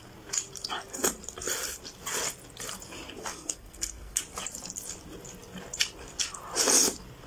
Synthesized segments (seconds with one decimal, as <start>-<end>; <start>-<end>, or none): 3.2-4.2